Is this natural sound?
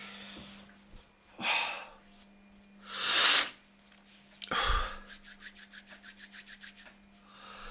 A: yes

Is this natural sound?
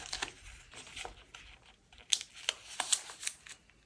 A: yes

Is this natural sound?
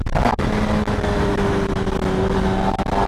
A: yes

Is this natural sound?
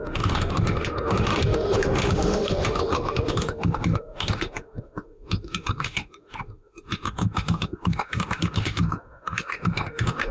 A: no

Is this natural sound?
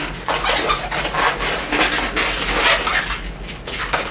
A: yes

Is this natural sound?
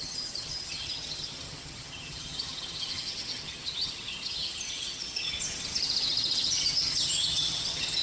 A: no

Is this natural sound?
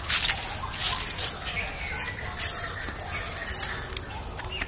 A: yes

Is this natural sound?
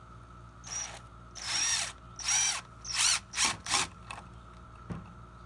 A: yes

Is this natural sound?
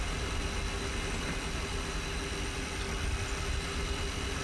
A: yes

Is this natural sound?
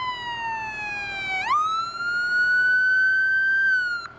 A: yes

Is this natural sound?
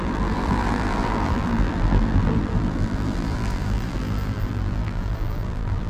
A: no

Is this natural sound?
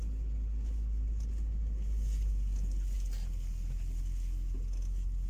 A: yes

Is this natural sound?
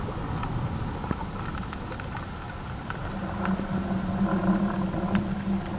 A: yes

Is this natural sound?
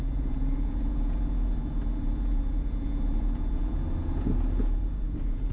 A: no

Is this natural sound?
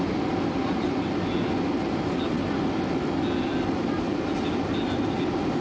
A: yes